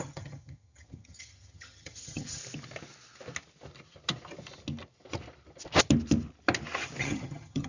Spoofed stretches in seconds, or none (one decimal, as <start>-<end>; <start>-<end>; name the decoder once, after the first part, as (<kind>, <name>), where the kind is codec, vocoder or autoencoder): 0.0-2.4 (vocoder, HiFi-GAN); 7.0-7.7